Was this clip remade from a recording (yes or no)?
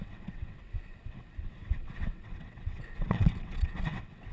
yes